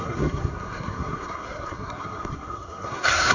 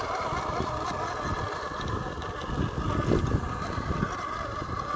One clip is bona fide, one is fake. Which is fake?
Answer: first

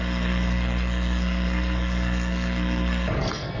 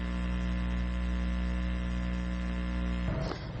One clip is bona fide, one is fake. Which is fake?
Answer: first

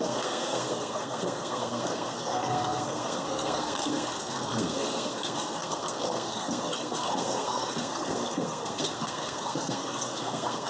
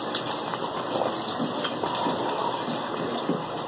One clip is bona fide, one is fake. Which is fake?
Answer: first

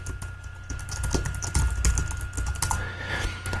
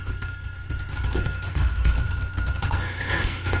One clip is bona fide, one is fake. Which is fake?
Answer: second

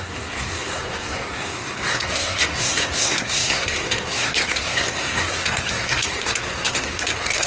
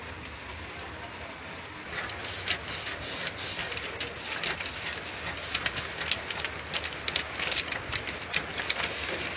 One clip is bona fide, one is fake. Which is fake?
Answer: first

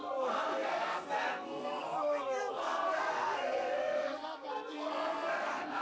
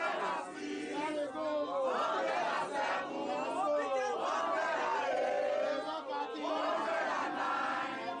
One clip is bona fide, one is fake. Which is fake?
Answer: first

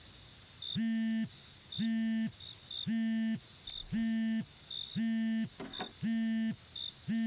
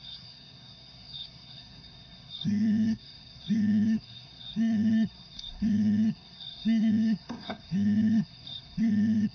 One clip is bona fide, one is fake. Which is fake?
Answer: second